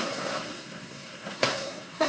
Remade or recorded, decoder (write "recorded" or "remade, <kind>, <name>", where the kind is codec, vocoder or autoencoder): remade, codec, SNAC